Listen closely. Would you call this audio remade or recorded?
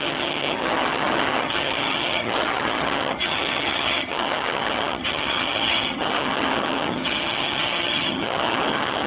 remade